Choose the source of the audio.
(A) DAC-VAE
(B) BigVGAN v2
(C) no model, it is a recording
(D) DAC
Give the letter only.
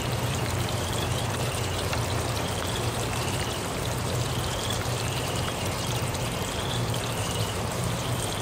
B